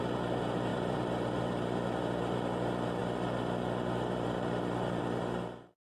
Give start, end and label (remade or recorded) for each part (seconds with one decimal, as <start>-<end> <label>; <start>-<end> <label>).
0.0-0.7 recorded; 0.7-1.4 remade; 1.4-5.9 recorded